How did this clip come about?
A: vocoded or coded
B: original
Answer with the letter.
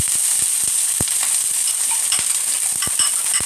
A